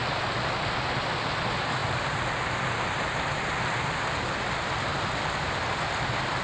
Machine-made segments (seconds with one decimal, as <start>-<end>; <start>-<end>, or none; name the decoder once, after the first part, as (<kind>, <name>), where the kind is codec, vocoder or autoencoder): none